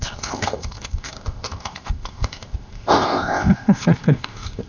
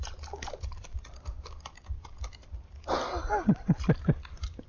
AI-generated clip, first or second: first